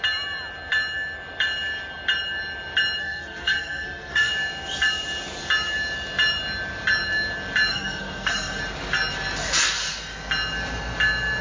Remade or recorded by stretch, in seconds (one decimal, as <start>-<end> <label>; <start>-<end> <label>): 0.0-3.0 recorded; 3.0-4.3 remade; 4.3-7.7 recorded; 7.7-8.6 remade; 8.6-11.4 recorded